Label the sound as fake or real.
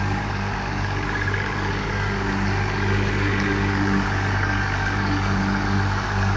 fake